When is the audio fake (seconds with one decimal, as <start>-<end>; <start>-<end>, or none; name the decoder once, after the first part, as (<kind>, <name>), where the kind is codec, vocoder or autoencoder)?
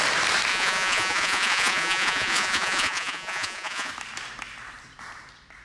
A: 0.5-3.9 (vocoder, Vocos)